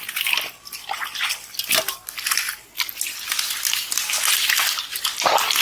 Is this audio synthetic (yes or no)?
no